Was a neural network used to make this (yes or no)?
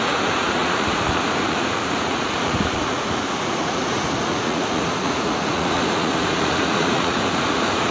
yes